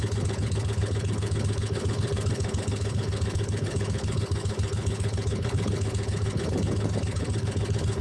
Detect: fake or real fake